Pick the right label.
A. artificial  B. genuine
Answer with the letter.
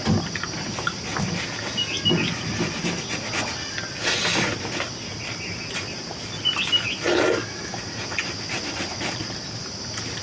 B